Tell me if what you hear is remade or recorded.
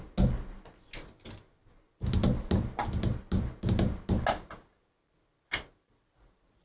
recorded